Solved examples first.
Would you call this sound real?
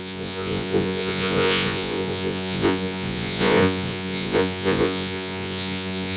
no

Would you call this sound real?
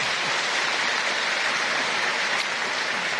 yes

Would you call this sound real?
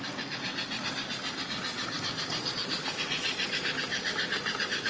yes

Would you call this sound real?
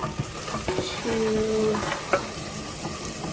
yes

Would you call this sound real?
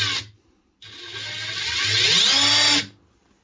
yes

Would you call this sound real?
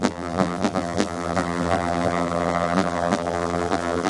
no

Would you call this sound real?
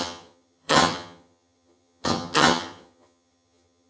no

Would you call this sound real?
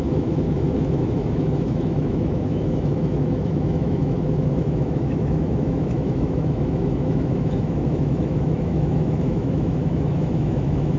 no